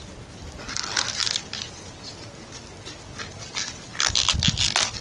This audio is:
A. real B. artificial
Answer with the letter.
A